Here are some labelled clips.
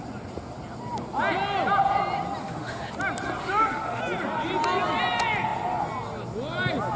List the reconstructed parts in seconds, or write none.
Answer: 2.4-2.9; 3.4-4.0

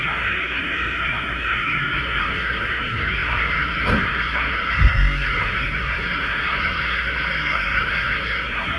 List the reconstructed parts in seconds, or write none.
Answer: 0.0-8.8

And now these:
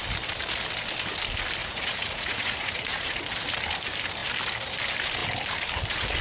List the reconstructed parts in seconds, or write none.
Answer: 1.6-3.2

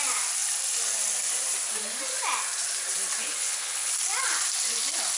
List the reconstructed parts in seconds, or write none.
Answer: 3.2-3.9

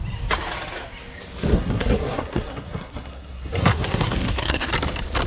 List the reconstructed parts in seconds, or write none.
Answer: 1.5-4.7

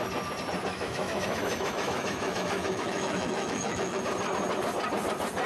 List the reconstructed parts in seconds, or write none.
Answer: 0.7-4.0

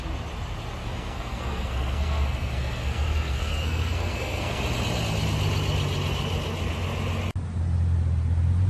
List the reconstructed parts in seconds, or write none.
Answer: 0.8-4.6

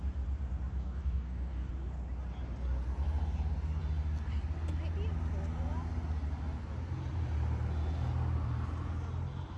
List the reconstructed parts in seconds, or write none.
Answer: 0.8-1.7